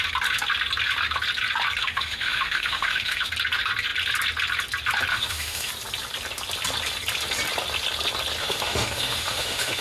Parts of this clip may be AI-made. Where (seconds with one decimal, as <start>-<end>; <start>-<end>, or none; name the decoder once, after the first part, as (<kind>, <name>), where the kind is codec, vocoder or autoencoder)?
1.8-3.3 (autoencoder, DAC-VAE); 5.1-5.7; 8.4-9.8